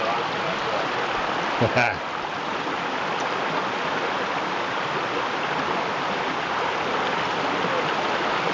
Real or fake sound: real